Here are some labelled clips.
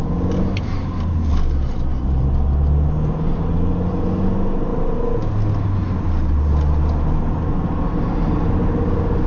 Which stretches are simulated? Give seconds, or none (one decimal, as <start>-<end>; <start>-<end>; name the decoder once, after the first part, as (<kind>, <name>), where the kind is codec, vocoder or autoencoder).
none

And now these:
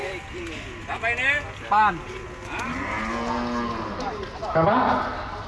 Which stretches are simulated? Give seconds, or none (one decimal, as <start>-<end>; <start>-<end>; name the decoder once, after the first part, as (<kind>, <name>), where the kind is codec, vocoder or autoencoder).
0.0-0.5 (vocoder, BigVGAN v2)

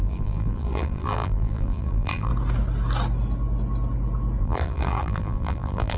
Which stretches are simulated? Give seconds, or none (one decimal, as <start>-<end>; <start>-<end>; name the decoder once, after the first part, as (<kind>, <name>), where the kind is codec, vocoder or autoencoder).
0.0-2.3 (vocoder, BigVGAN v2); 4.4-6.0